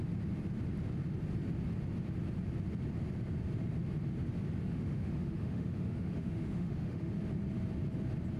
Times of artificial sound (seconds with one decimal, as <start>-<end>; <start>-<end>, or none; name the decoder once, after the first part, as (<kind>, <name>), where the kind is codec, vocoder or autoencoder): 4.6-7.1 (autoencoder, DAC-VAE)